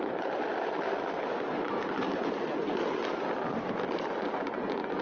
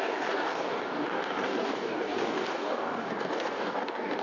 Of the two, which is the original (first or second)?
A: first